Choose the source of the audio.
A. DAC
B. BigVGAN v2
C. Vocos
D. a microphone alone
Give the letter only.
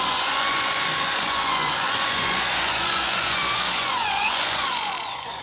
C